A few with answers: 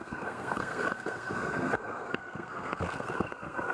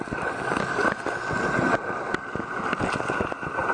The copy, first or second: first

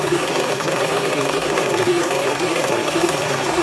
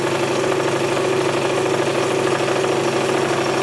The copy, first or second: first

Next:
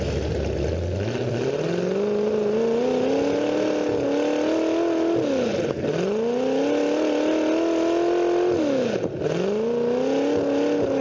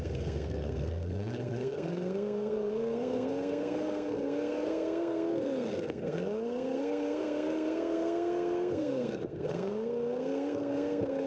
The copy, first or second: second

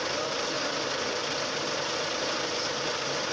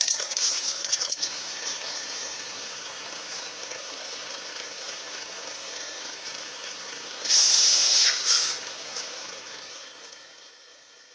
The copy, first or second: second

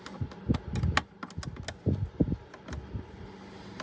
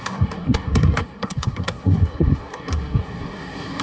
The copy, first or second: second